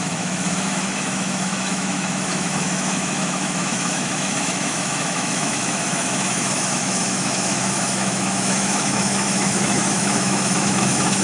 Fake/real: fake